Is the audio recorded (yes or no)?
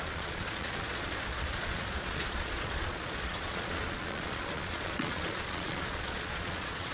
no